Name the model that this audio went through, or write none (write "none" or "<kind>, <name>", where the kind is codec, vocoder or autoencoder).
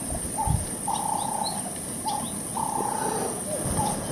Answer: none